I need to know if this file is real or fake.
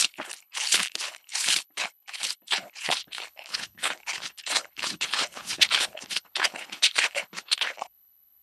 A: fake